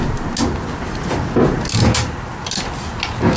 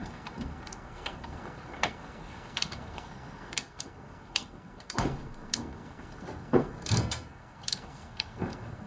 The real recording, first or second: first